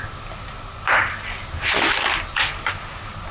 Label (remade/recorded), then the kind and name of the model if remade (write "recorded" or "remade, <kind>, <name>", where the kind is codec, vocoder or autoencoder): recorded